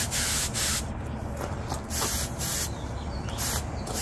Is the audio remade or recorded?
recorded